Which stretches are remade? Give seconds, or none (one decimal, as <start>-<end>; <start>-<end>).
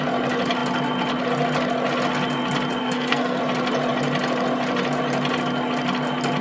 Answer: 2.8-3.4